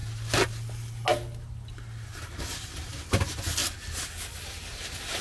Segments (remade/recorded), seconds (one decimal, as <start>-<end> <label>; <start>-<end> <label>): 0.0-5.2 recorded